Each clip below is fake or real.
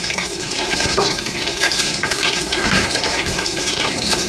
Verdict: fake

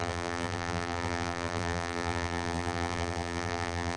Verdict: fake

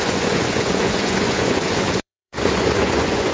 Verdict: fake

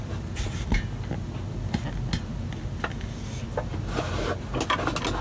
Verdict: real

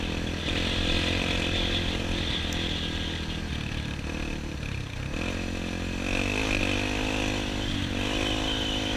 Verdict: real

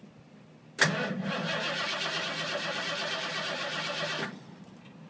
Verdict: real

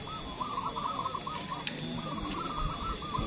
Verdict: real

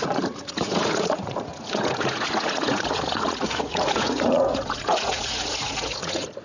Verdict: fake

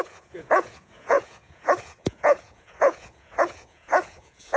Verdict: fake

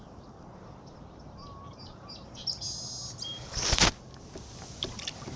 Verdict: real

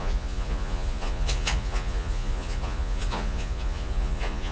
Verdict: fake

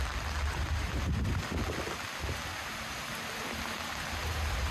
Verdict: real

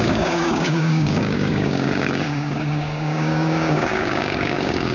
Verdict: fake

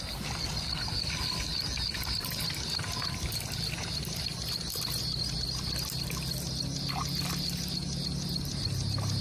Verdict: real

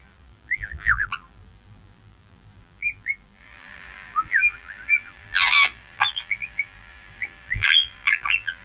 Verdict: fake